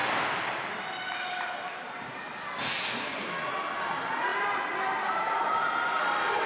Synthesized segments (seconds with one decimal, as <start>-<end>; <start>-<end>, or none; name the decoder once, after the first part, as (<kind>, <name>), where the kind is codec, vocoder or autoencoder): none